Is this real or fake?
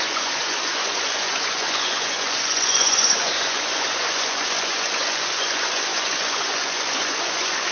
fake